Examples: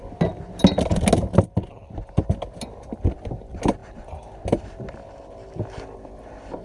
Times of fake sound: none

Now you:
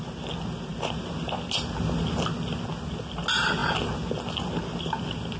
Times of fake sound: none

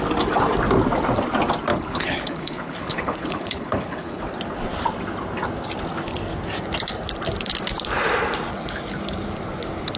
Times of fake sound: 1.7-4.2

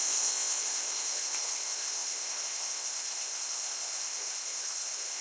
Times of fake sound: 0.0-5.2